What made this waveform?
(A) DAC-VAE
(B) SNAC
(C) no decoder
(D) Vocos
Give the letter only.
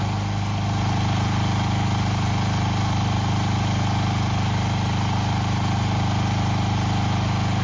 C